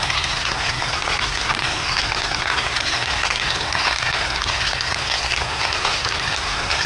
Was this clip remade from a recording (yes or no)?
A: yes